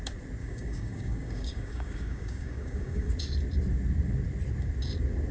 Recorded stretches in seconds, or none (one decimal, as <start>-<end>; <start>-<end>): 0.0-0.4; 3.1-5.3

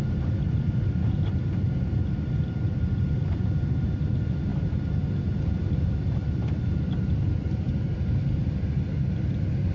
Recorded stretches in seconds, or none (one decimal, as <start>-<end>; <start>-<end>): 0.0-4.5; 8.6-9.7

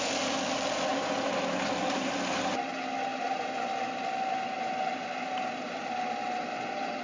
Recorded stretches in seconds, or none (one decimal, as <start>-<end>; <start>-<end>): 0.0-7.0

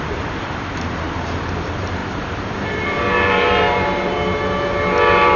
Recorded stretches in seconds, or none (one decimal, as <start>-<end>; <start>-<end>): none